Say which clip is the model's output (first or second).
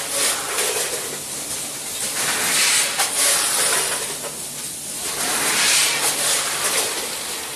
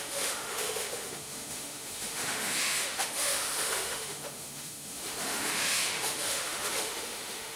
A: second